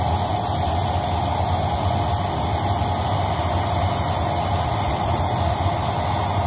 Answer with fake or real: real